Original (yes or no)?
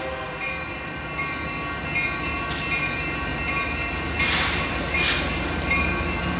yes